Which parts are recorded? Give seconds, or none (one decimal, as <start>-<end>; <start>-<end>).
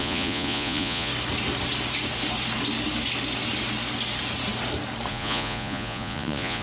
1.1-5.1